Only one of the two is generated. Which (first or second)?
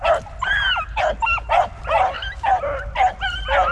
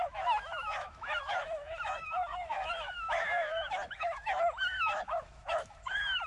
second